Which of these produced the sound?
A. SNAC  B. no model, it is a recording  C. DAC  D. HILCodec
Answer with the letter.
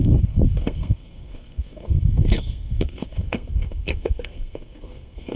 A